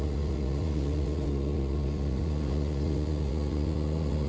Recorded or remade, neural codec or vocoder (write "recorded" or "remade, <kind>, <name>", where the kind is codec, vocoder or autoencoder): remade, vocoder, Vocos